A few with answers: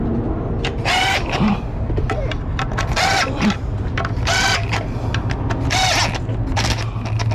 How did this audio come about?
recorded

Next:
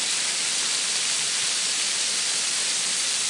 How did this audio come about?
remade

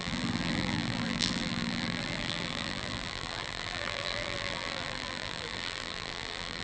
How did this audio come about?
remade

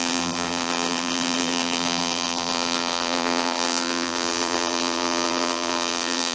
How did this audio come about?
remade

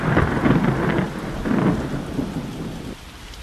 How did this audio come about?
recorded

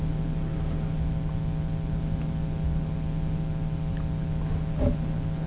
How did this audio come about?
recorded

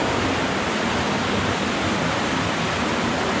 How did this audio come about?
recorded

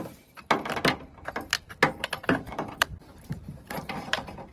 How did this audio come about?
remade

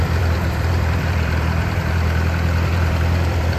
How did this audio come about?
remade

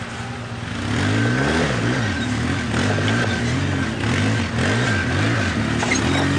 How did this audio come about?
recorded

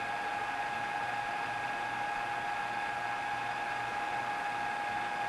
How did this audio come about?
remade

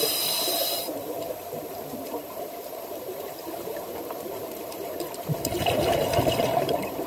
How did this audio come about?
remade